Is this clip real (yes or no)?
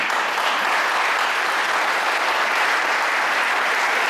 yes